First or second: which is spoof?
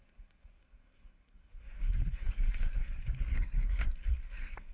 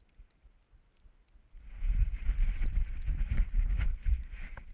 first